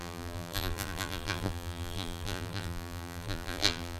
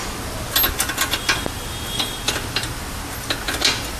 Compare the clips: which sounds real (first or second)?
second